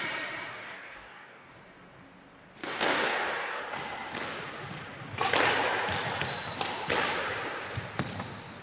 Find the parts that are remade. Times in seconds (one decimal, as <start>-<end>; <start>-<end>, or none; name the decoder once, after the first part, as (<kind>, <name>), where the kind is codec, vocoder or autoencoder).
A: 0.5-1.5 (codec, DAC); 2.6-3.6